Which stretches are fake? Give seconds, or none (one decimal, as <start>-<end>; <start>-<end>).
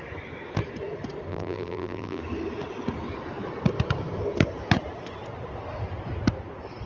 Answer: 1.3-2.2